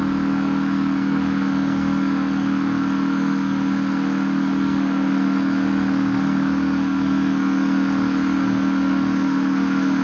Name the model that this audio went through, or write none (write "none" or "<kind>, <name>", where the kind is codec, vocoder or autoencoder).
codec, SNAC